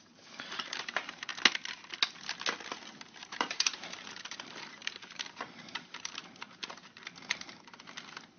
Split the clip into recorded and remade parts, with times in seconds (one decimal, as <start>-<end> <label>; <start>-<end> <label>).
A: 0.0-1.3 remade; 1.3-3.2 recorded; 3.2-8.4 remade